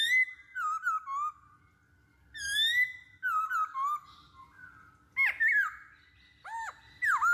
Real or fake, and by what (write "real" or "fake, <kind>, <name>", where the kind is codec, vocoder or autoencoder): real